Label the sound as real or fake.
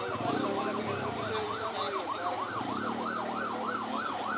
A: real